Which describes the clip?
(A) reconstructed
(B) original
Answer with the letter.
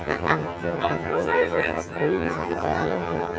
A